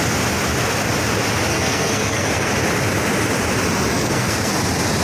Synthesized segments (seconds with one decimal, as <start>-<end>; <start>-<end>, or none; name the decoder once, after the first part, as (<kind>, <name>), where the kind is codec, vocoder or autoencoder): 1.5-2.5 (codec, SNAC); 3.9-4.5